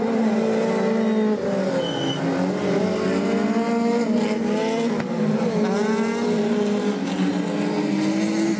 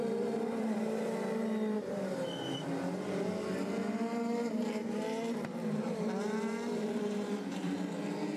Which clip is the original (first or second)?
first